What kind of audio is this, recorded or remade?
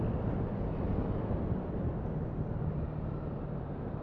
recorded